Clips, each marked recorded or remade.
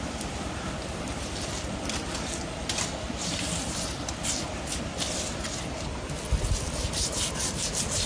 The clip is recorded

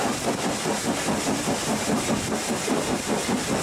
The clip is remade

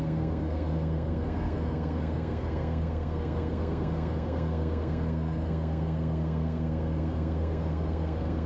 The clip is remade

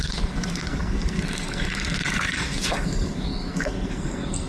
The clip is remade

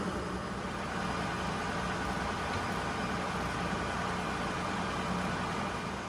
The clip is recorded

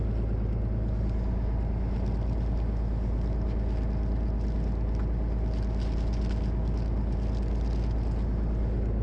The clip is recorded